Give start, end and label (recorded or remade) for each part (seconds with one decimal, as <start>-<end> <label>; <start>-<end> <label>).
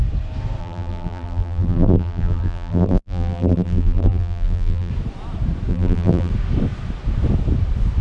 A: 0.0-0.6 recorded; 0.6-4.9 remade; 4.9-5.7 recorded; 5.7-6.3 remade; 6.3-8.0 recorded